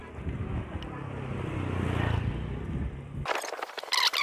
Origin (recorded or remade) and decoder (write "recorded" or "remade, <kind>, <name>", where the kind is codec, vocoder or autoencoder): recorded